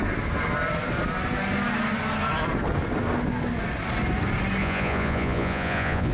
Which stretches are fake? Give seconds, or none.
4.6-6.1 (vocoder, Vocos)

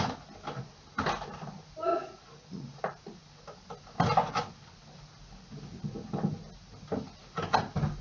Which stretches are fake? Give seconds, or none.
1.9-2.8 (vocoder, Vocos)

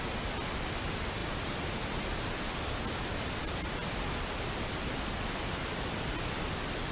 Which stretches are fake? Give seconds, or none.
none

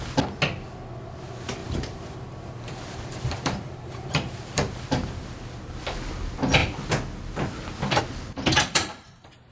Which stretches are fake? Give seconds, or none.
1.6-5.3 (vocoder, BigVGAN v2)

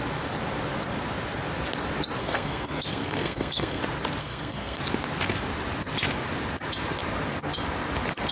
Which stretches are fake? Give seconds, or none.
2.2-3.8 (codec, SNAC); 4.2-4.8

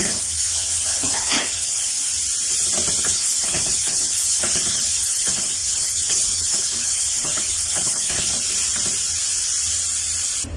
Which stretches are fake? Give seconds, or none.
0.0-2.1 (codec, HILCodec); 3.0-8.3